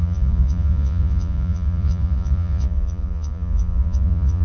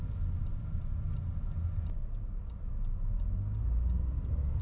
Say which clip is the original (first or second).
second